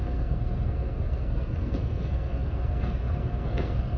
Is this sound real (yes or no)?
no